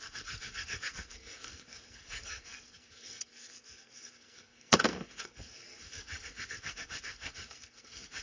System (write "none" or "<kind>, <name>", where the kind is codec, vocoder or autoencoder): codec, SNAC